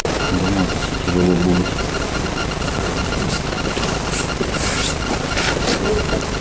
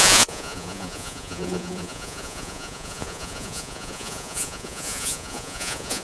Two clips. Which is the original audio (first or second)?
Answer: first